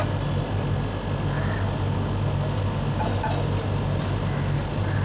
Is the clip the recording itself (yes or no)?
yes